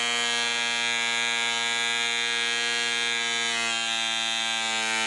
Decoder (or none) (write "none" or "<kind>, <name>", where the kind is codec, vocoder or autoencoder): none